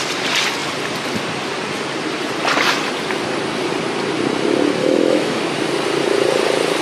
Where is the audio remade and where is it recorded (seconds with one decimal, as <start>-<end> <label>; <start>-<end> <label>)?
0.0-4.8 recorded; 4.8-5.4 remade; 5.4-6.8 recorded